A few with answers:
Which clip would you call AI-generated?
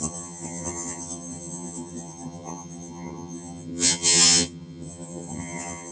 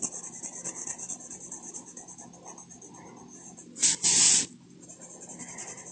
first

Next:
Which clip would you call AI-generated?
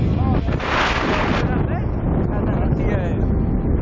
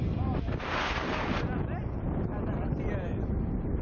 second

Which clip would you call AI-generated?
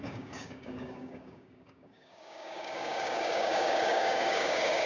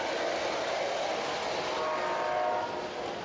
first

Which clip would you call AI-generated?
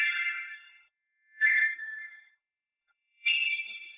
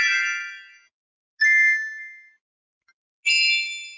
first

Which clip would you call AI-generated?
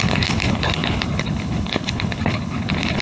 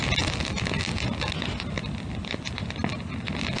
first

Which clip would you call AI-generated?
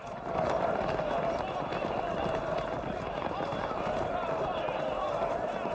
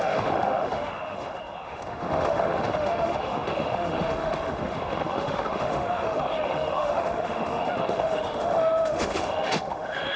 second